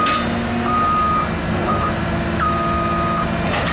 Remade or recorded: recorded